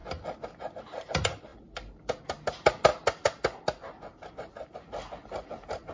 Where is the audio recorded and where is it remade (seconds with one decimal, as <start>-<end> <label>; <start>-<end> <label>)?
0.0-1.5 recorded; 1.5-2.0 remade; 2.0-2.9 recorded; 2.9-4.3 remade; 4.3-5.9 recorded